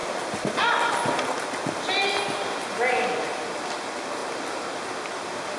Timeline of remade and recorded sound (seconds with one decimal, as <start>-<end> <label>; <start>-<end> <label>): 0.0-5.6 recorded